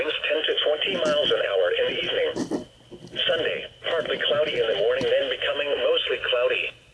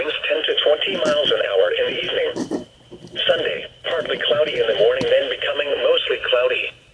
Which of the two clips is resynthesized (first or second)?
second